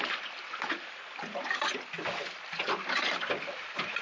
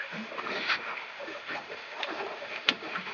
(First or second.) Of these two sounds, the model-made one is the second